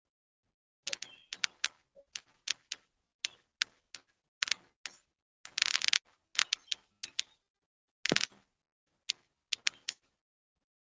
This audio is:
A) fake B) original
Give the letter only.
B